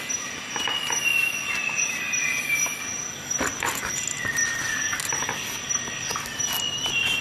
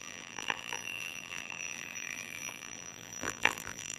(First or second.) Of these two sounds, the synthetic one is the second